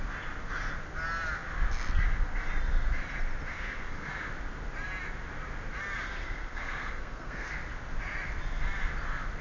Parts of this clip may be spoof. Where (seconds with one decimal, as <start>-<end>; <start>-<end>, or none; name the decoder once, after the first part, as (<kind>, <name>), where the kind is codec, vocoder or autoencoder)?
3.5-4.1 (codec, SNAC); 6.2-7.5